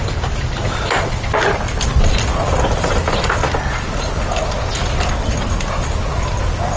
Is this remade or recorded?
recorded